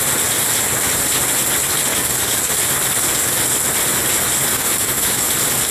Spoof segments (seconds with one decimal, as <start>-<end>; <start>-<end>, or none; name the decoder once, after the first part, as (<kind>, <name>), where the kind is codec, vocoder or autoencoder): 1.9-2.5 (codec, DAC); 4.5-5.3